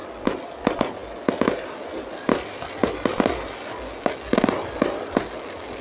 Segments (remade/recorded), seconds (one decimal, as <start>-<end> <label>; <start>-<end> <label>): 0.0-5.8 recorded